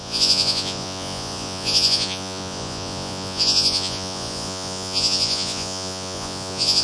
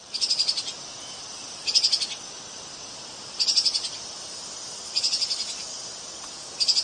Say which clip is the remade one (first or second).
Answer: first